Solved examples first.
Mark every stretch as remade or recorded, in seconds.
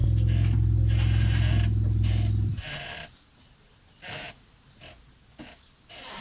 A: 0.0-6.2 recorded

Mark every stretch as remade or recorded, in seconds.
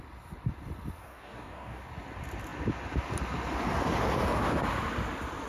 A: 0.0-1.0 recorded; 1.0-1.8 remade; 1.8-5.5 recorded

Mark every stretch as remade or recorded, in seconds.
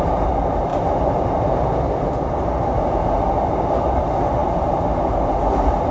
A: 0.0-5.9 recorded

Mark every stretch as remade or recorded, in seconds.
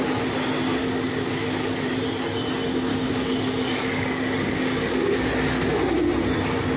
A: 0.0-0.8 recorded; 0.8-1.9 remade; 1.9-2.9 recorded; 2.9-5.3 remade; 5.3-6.8 recorded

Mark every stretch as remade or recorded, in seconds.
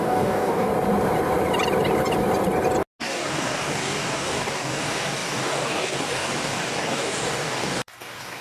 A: 0.0-0.7 remade; 0.7-3.0 recorded; 3.0-8.4 remade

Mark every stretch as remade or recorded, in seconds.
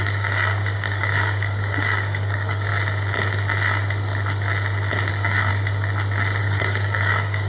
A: 0.0-2.7 remade; 2.7-5.1 recorded; 5.1-5.5 remade; 5.5-6.4 recorded; 6.4-7.5 remade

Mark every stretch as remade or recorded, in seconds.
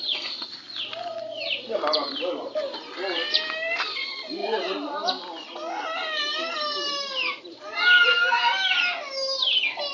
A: 0.0-9.9 recorded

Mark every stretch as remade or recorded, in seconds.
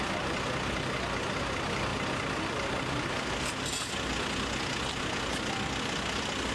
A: 0.0-6.5 recorded